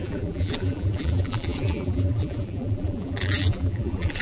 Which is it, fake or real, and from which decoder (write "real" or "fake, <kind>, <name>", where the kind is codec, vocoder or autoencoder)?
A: fake, vocoder, BigVGAN v2